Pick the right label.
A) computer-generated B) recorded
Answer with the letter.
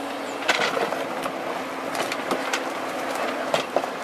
B